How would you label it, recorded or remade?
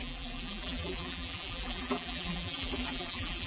remade